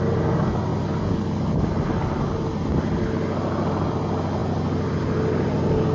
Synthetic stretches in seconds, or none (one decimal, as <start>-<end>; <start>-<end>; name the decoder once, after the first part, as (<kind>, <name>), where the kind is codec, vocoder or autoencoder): 0.7-4.0 (vocoder, BigVGAN v2)